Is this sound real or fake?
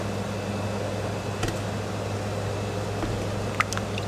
real